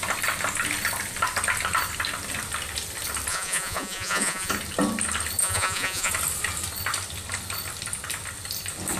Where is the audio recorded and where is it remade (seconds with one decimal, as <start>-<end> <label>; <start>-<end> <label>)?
0.0-3.3 recorded; 3.3-4.5 remade; 4.5-5.4 recorded; 5.4-6.1 remade; 6.1-9.0 recorded